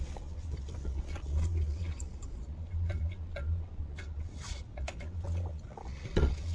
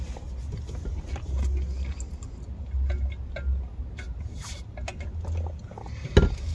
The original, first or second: second